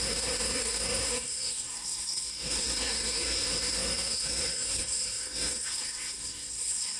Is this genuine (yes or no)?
no